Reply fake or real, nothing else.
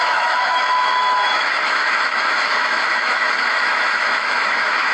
fake